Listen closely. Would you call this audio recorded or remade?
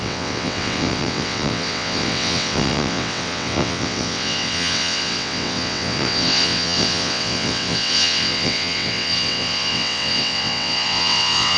remade